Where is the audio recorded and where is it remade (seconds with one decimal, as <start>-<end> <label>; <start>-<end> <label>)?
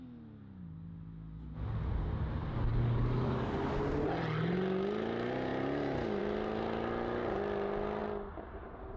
0.0-2.7 recorded; 2.7-3.7 remade; 3.7-9.0 recorded